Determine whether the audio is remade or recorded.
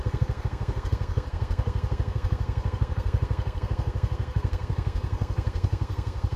remade